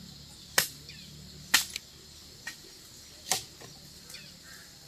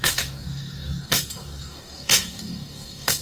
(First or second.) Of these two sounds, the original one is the first